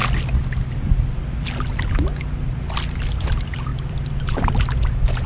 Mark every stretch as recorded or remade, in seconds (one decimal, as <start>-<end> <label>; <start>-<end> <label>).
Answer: 0.0-3.7 recorded; 3.7-4.4 remade; 4.4-5.3 recorded

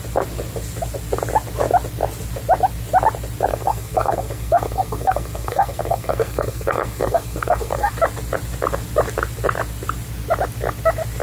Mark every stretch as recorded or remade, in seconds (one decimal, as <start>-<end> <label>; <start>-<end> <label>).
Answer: 0.0-3.5 recorded; 3.5-7.9 remade; 7.9-11.2 recorded

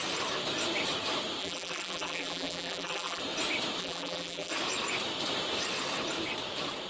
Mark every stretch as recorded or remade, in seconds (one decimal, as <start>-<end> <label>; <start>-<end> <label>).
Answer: 0.0-1.4 recorded; 1.4-3.2 remade; 3.2-3.8 recorded; 3.8-4.5 remade; 4.5-6.9 recorded

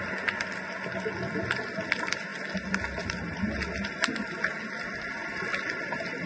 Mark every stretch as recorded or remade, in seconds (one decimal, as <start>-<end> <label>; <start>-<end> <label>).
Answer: 0.0-6.3 recorded

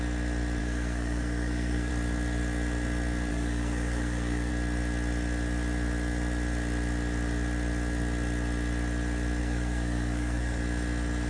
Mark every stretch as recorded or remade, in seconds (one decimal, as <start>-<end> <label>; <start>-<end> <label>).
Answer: 0.0-0.6 recorded; 0.6-1.9 remade; 1.9-3.3 recorded; 3.3-4.5 remade; 4.5-9.4 recorded; 9.4-10.6 remade; 10.6-11.3 recorded

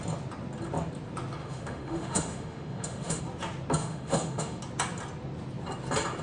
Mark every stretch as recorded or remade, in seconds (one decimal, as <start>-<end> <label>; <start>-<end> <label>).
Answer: 0.0-1.4 recorded; 1.4-3.2 remade; 3.2-3.8 recorded; 3.8-4.6 remade; 4.6-6.2 recorded

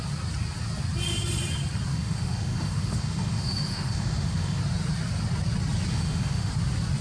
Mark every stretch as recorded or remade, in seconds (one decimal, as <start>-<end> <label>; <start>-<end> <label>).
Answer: 0.0-1.9 recorded; 1.9-4.6 remade; 4.6-5.9 recorded; 5.9-6.5 remade; 6.5-7.0 recorded

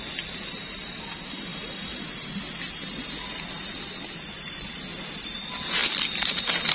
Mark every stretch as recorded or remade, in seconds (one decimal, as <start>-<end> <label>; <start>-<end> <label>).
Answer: 0.0-6.7 recorded